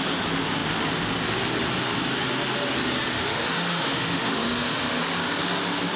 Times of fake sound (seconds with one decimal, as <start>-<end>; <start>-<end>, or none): 3.1-5.0